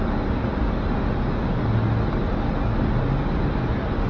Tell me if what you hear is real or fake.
real